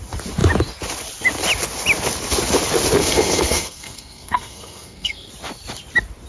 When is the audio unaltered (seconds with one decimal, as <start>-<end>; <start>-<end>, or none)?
0.0-3.0; 5.3-6.3